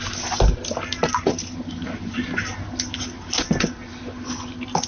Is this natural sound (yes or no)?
yes